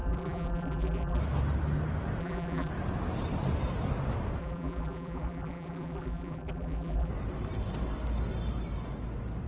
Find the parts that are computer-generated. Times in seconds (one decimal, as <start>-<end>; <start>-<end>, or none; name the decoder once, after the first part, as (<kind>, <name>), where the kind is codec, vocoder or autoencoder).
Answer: 0.0-1.2 (vocoder, BigVGAN v2); 2.2-2.7; 4.4-7.1